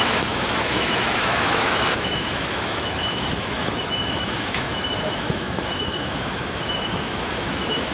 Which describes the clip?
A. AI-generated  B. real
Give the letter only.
A